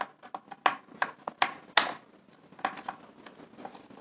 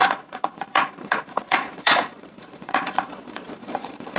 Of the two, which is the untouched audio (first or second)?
first